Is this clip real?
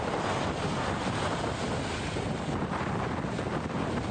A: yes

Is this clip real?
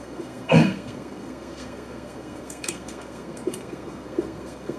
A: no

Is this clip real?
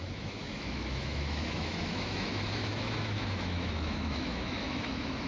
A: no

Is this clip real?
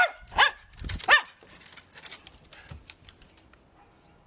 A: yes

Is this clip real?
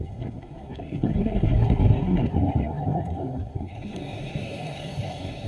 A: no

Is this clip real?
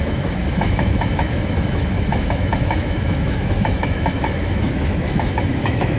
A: no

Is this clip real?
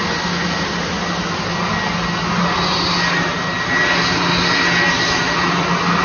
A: yes